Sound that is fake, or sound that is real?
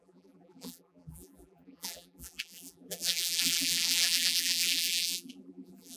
fake